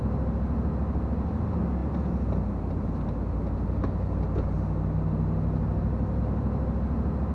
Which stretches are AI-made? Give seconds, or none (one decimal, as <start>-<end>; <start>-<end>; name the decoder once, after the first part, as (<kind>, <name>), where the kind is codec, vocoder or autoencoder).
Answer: none